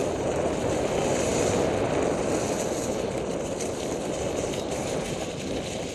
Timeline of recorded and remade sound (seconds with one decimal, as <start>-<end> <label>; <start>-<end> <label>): 0.0-5.9 recorded